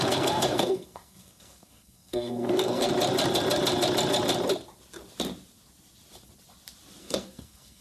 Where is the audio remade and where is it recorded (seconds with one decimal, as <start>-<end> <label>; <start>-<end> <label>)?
0.0-2.9 remade; 2.9-7.0 recorded; 7.0-7.8 remade